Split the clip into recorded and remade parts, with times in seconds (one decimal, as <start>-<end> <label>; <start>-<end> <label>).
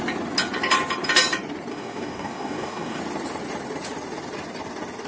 0.0-1.7 recorded; 1.7-3.0 remade; 3.0-5.1 recorded